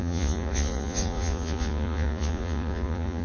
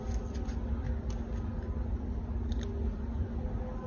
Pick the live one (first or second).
second